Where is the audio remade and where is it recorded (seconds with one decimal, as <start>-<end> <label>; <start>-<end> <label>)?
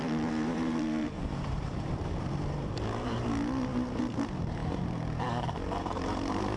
0.0-6.6 remade